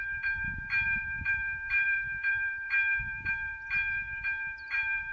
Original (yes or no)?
no